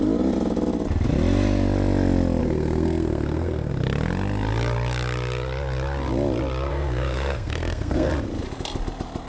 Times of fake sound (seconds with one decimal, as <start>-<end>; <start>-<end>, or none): 2.4-3.7; 6.7-8.1